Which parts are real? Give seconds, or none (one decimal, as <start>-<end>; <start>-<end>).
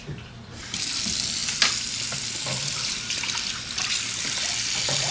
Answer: 0.0-5.1